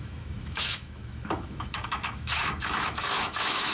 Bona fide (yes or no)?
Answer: no